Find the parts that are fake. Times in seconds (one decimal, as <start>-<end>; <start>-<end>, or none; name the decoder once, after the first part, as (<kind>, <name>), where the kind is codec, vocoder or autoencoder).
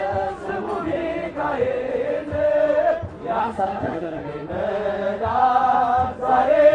3.4-4.2 (codec, SNAC)